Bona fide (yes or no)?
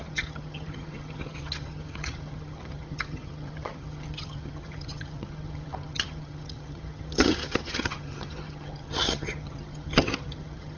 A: no